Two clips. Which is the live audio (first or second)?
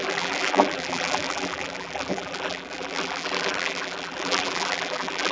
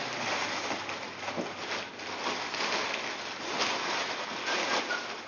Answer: second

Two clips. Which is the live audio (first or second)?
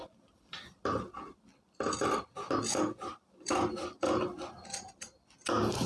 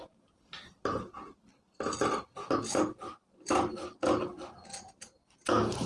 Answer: second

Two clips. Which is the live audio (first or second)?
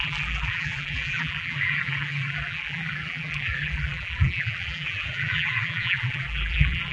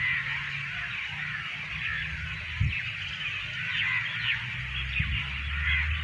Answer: second